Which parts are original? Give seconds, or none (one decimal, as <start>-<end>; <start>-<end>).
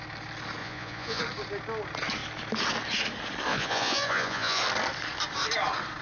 0.0-0.6; 1.2-3.5; 4.6-6.0